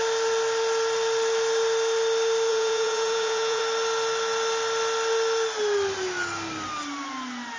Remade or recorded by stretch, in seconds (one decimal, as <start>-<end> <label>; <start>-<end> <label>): 0.0-2.5 recorded; 2.5-3.6 remade; 3.6-7.6 recorded